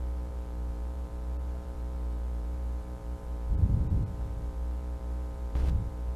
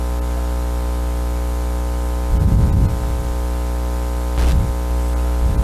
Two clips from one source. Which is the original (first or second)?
second